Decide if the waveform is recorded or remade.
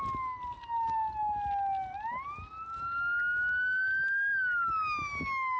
recorded